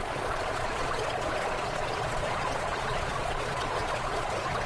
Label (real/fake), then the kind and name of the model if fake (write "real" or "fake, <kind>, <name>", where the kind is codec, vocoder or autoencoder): fake, vocoder, Vocos